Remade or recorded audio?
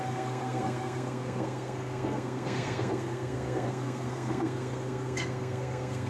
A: remade